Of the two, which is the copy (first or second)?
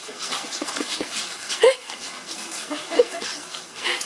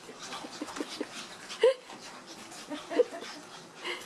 first